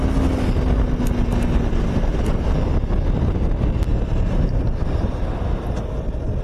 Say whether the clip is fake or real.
real